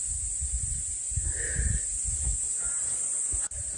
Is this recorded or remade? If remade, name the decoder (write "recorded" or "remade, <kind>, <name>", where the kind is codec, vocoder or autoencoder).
recorded